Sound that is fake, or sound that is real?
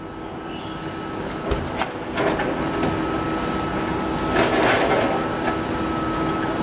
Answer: real